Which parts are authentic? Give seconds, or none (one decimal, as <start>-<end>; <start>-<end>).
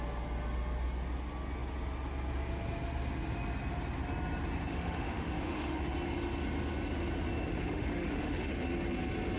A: 0.0-4.7; 5.8-7.5; 8.5-9.4